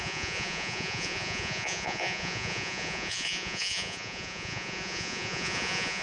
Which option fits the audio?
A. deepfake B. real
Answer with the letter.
A